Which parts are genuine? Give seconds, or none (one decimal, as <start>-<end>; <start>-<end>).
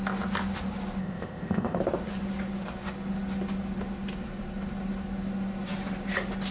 0.0-1.0; 1.8-6.5